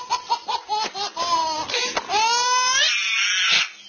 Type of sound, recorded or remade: recorded